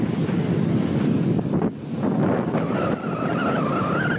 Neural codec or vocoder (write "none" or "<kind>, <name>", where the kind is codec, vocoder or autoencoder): none